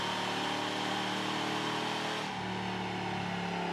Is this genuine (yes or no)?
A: yes